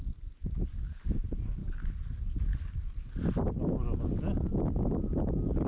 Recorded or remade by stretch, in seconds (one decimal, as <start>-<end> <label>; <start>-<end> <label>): 0.0-5.7 recorded